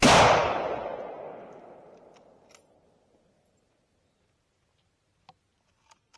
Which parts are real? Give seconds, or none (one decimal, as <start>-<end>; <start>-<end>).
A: 0.0-6.2